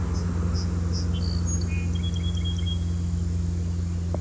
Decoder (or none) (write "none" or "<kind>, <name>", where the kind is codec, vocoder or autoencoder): none